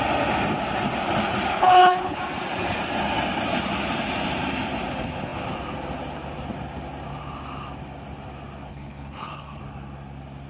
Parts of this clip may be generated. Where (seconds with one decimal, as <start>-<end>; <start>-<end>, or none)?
1.5-2.2; 8.7-9.6